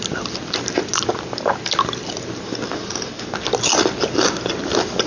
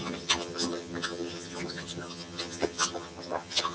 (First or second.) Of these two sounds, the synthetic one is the second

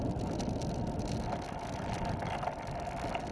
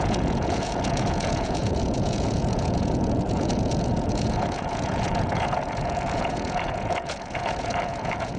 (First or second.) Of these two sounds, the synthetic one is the second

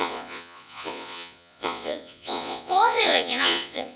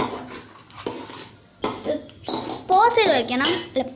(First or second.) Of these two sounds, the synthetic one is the first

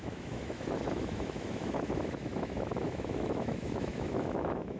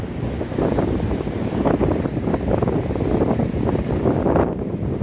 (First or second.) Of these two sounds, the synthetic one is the first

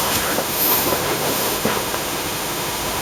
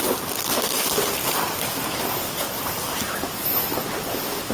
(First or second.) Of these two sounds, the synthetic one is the first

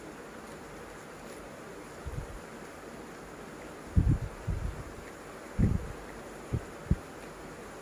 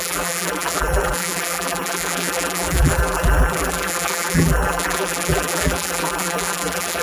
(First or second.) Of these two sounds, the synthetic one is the second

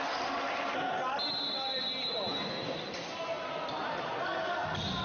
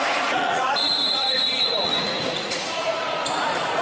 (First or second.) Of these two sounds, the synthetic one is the second